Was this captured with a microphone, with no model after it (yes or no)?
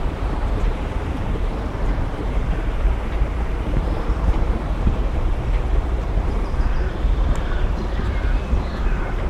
no